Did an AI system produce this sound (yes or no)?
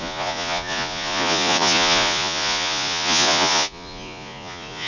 yes